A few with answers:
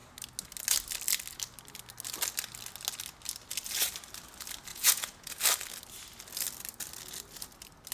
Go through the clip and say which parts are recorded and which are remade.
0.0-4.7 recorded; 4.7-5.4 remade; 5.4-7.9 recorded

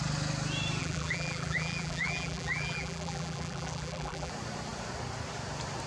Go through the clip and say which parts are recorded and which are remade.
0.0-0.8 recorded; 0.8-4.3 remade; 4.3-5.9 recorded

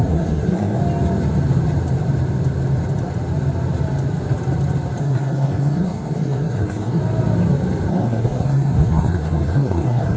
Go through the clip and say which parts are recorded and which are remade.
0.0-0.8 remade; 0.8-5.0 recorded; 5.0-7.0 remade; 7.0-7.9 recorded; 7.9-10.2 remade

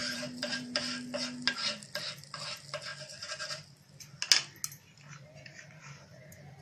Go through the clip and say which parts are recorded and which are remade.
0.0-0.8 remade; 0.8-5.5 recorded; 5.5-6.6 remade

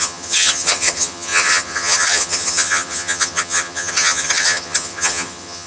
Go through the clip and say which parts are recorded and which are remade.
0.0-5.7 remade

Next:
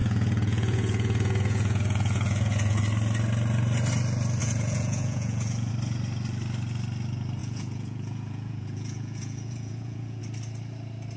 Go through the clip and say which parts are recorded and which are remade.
0.0-2.8 remade; 2.8-4.4 recorded; 4.4-5.7 remade; 5.7-7.4 recorded; 7.4-10.2 remade; 10.2-11.2 recorded

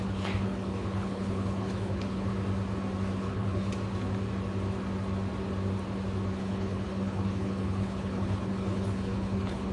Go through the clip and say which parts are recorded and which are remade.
0.0-2.3 remade; 2.3-3.2 recorded; 3.2-3.7 remade; 3.7-6.3 recorded; 6.3-9.7 remade